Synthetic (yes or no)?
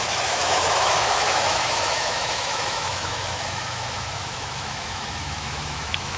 yes